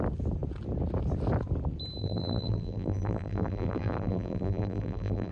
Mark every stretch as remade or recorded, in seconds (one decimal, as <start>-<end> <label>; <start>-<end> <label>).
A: 0.0-2.0 recorded; 2.0-5.3 remade